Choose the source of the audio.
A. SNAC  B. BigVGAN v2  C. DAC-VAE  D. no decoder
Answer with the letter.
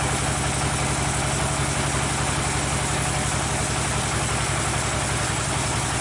D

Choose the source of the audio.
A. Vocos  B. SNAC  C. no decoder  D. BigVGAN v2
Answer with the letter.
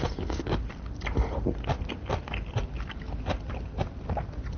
C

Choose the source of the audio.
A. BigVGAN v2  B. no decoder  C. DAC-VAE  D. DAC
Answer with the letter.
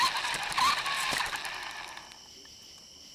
B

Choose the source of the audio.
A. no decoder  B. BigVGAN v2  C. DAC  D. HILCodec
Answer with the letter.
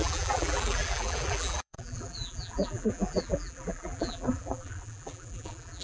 B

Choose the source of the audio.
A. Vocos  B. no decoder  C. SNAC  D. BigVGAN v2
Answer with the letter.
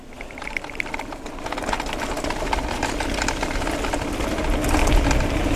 D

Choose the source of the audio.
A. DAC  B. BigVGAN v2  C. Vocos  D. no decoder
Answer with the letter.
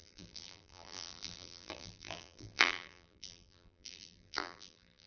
B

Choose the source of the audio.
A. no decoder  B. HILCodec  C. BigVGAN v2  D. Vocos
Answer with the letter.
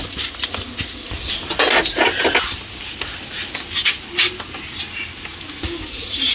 A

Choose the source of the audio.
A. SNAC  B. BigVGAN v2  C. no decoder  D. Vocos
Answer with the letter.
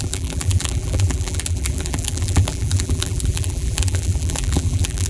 B